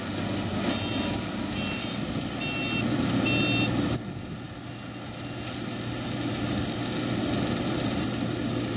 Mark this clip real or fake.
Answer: real